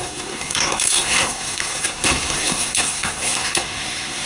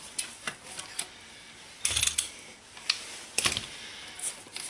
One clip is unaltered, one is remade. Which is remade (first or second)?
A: first